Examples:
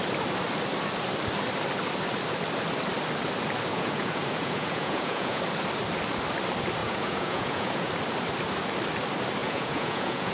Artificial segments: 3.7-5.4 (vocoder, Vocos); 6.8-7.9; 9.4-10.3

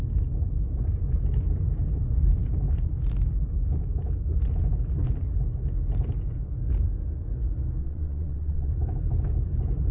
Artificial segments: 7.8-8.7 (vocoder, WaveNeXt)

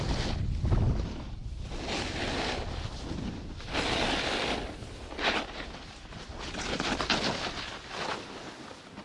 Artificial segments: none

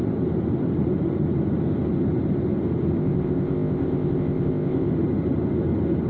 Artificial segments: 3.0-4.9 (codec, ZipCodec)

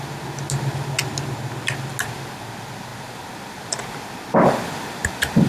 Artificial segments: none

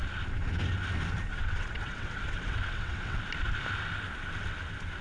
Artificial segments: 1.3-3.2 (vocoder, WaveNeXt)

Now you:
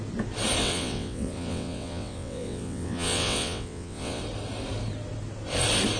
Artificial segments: 0.6-4.2 (vocoder, WaveNeXt)

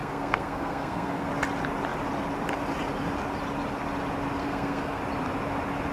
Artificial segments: 0.0-1.3 (codec, SNAC); 4.4-5.0